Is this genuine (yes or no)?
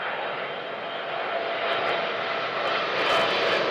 yes